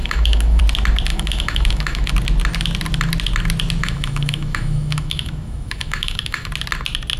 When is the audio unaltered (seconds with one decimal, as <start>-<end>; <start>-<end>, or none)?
0.6-1.1; 2.1-3.8; 6.5-7.2